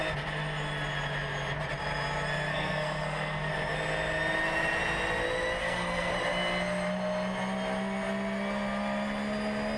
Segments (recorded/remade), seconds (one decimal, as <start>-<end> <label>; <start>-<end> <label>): 0.0-2.5 recorded; 2.5-3.5 remade; 3.5-5.6 recorded; 5.6-6.1 remade; 6.1-9.8 recorded

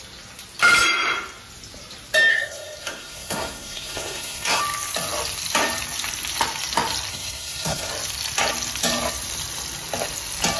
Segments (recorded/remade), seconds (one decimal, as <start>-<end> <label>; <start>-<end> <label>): 0.0-2.3 recorded; 2.3-4.6 remade; 4.6-7.1 recorded; 7.1-7.9 remade; 7.9-10.6 recorded